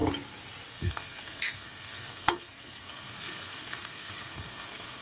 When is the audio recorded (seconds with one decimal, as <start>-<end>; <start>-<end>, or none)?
0.0-0.7